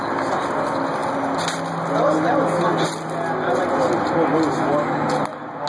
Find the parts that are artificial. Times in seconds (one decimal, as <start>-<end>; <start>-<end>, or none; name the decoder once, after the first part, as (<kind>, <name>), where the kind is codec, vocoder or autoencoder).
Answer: none